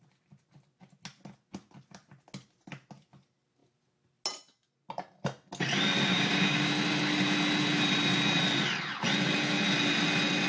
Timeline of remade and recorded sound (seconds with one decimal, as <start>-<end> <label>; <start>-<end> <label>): 0.0-6.1 recorded; 6.1-6.7 remade; 6.7-10.5 recorded